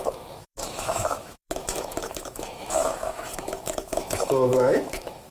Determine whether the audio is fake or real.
fake